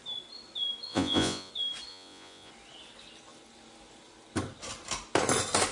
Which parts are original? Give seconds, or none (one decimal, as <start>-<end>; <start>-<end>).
0.0-0.9; 1.5-1.9; 2.5-5.7